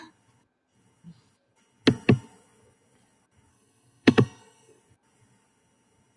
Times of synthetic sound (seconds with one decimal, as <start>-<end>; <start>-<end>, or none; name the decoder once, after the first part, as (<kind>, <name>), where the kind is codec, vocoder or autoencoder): 3.5-4.8 (codec, SNAC)